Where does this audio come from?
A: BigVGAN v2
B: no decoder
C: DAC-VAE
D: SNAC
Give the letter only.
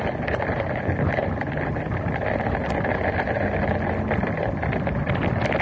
B